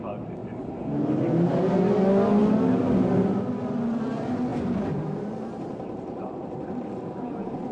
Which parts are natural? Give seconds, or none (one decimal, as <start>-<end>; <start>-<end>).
0.0-0.4; 1.5-4.5; 7.3-7.7